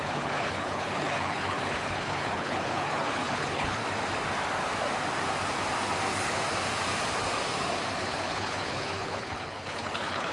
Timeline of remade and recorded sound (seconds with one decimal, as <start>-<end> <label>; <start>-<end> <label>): 0.0-3.8 remade; 3.8-7.9 recorded; 7.9-10.3 remade